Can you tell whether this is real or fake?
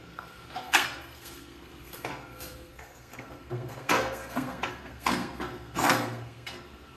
fake